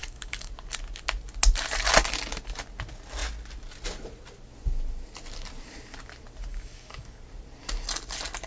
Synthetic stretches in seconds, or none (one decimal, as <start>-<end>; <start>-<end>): 0.0-0.5; 6.5-7.2